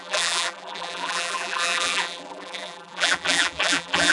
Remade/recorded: remade